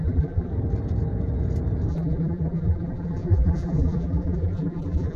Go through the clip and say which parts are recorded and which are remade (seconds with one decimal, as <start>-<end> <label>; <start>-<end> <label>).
0.0-0.5 remade; 0.5-1.9 recorded; 1.9-5.2 remade